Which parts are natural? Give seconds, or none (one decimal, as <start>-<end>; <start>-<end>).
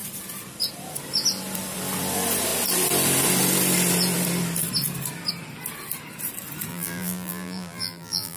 0.0-6.7